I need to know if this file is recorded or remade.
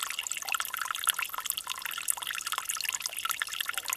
recorded